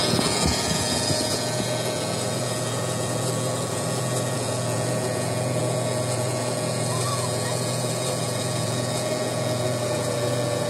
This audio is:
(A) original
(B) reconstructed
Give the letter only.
B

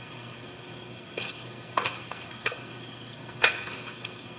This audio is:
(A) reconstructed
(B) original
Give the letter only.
A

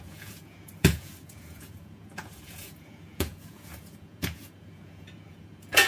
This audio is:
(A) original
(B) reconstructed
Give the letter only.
B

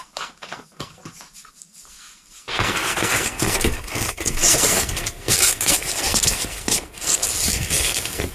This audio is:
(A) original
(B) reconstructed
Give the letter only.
B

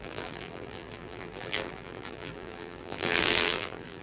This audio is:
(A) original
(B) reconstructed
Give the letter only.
B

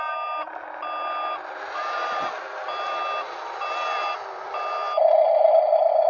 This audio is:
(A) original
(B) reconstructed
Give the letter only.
A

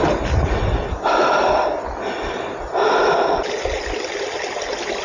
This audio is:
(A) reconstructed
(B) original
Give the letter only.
B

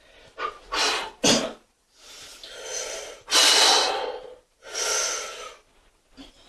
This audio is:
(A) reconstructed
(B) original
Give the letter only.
B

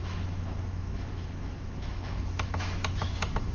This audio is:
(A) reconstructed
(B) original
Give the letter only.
A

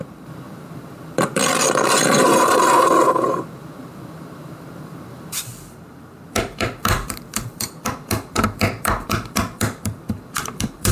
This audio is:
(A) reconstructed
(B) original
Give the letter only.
A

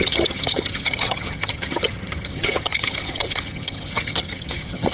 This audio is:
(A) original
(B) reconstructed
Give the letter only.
B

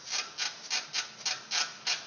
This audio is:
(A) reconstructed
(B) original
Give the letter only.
B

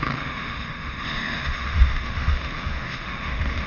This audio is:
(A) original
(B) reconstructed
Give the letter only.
B